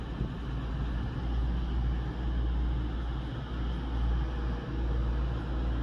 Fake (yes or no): no